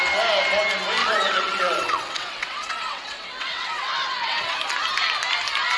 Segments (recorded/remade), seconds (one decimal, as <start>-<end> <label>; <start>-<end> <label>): 0.0-1.0 recorded; 1.0-4.5 remade; 4.5-5.8 recorded